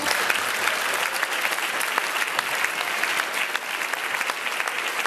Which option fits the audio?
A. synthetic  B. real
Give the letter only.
B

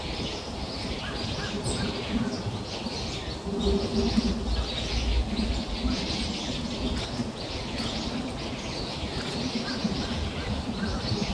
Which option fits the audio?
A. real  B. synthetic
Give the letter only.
A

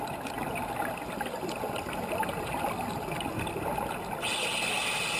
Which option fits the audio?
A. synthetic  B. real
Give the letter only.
B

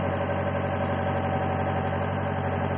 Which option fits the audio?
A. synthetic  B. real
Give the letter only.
B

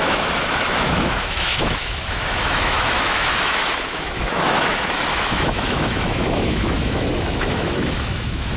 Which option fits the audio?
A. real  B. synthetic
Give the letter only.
B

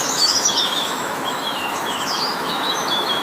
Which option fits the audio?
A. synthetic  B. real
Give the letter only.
A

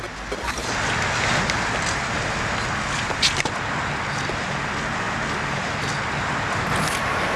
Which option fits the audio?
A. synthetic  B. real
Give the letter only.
B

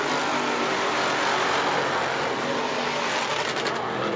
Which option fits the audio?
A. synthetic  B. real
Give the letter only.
B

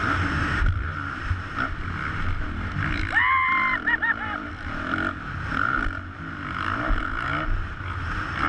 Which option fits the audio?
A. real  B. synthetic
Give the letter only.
A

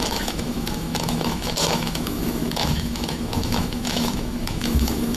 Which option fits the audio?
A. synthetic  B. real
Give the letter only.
A